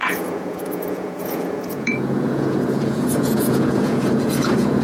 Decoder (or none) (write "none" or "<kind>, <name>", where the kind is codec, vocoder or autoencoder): vocoder, Vocos